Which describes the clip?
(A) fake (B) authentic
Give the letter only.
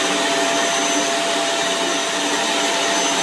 B